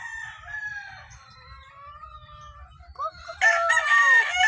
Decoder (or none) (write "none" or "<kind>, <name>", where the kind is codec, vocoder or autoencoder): none